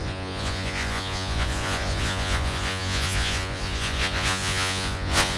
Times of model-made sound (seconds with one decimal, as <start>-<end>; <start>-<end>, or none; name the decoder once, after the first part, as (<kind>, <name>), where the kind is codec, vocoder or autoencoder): 0.0-5.4 (vocoder, Vocos)